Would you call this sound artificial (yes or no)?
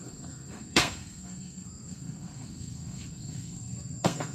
yes